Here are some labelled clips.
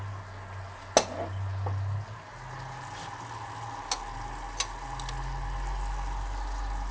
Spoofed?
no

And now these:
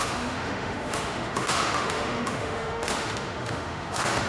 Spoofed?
yes